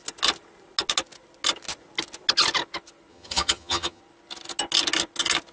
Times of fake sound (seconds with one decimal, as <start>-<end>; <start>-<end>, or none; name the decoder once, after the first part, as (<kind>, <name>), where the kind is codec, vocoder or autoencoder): 3.1-4.0 (vocoder, HiFi-GAN)